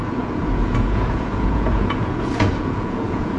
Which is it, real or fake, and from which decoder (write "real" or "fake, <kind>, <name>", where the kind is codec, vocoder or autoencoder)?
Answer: fake, vocoder, Vocos